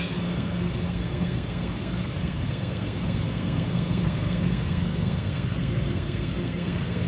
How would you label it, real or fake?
fake